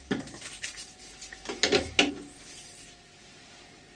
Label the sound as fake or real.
real